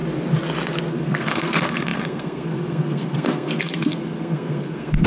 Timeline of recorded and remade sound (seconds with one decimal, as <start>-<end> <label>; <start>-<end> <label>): 0.0-0.9 recorded; 0.9-5.1 remade